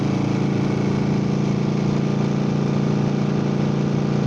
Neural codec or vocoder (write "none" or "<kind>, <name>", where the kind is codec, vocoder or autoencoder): none